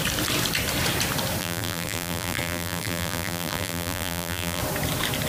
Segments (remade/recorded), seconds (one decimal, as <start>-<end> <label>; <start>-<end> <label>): 0.0-1.4 recorded; 1.4-4.6 remade; 4.6-5.3 recorded